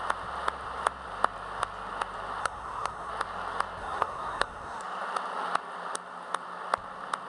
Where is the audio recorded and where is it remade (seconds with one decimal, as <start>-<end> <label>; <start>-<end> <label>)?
0.0-2.4 recorded; 2.4-3.1 remade; 3.1-3.8 recorded; 3.8-4.8 remade; 4.8-7.3 recorded

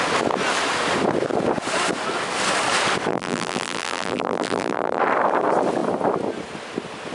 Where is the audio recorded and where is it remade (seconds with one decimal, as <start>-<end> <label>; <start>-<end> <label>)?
0.0-3.1 recorded; 3.1-5.0 remade; 5.0-7.1 recorded